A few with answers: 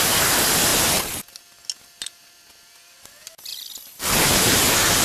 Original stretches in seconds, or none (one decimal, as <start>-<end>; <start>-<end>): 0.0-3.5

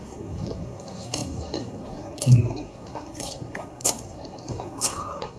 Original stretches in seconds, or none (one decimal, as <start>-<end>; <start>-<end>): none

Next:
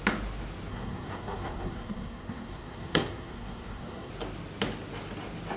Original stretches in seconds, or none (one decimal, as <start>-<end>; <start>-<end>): 0.0-0.7; 4.1-5.6

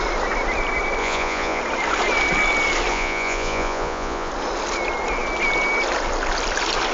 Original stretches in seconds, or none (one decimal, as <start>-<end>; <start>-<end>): 0.0-1.0; 1.6-2.9; 4.3-6.9

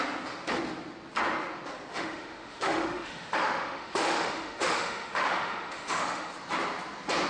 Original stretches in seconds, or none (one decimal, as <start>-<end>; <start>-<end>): 0.0-1.9; 6.3-7.3